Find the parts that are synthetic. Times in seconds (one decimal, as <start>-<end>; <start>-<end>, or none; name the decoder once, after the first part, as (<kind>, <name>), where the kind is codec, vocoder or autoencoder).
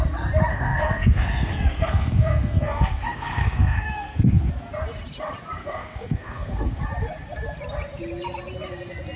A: 0.5-4.5 (codec, SNAC); 5.6-6.8